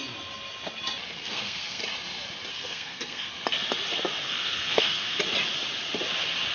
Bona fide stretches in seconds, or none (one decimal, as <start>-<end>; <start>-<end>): 0.0-1.1; 1.8-2.5; 3.3-4.2; 5.2-6.5